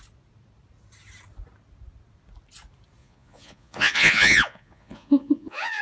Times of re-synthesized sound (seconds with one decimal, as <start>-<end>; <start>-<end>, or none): 3.0-5.8